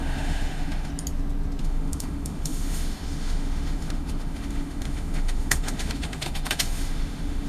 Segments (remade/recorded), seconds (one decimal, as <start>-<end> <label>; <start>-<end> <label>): 0.0-0.9 remade; 0.9-1.6 recorded; 1.6-7.5 remade